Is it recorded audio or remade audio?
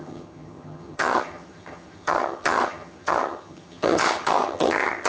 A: remade